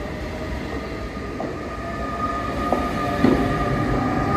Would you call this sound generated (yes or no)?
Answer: no